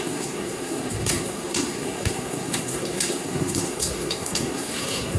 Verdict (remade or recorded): remade